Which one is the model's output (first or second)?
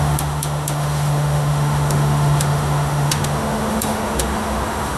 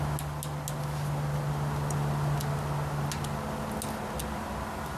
first